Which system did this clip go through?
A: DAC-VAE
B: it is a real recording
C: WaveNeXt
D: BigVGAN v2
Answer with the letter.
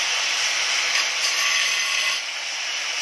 D